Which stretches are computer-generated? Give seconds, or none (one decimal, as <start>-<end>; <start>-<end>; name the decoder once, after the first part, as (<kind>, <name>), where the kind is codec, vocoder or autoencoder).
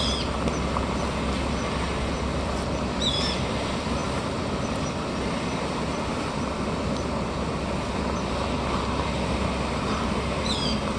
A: none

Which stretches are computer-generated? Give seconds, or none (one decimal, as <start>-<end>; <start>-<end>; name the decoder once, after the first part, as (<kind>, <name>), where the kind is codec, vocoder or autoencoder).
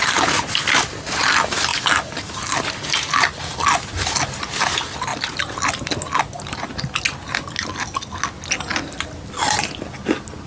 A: none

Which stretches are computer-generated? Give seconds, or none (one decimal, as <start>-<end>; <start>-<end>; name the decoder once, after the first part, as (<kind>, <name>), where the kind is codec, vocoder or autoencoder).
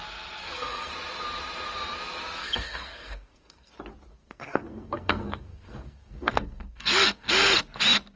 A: 0.4-0.9 (codec, SNAC); 2.4-3.7; 4.2-7.3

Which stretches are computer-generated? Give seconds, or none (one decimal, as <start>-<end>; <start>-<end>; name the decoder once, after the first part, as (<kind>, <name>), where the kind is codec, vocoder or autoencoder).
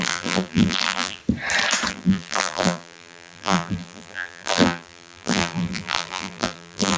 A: 0.0-1.2 (vocoder, BigVGAN v2); 1.9-7.0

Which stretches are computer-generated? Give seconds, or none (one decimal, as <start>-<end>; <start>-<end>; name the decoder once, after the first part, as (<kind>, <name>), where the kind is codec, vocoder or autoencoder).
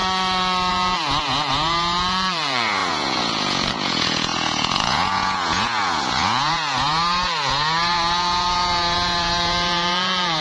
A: 0.7-10.4 (vocoder, Vocos)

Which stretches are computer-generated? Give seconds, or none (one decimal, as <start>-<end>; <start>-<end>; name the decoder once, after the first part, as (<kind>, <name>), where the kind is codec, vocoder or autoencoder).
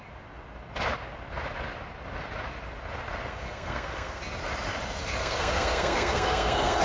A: 3.3-4.2 (codec, SNAC); 5.2-6.8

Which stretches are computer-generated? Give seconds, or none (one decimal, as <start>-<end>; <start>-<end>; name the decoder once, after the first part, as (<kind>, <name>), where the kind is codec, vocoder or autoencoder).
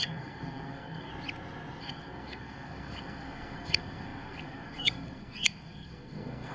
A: 0.0-1.1 (codec, SNAC); 1.8-6.5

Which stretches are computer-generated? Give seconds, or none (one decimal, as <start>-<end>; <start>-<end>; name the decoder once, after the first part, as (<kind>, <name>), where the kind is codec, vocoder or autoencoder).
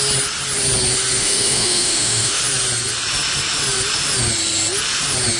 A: 1.2-2.4 (autoencoder, DAC-VAE)